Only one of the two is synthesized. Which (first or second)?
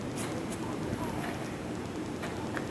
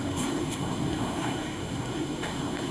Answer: second